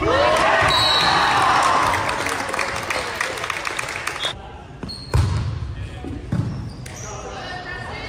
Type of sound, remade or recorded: recorded